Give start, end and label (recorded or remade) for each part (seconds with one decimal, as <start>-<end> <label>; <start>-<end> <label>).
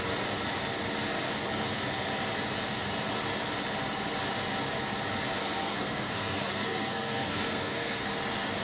0.0-5.4 recorded; 5.4-8.1 remade; 8.1-8.6 recorded